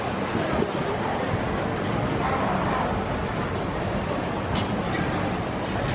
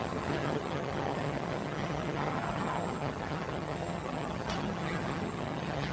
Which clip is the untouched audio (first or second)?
first